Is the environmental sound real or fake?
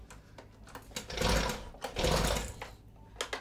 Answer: real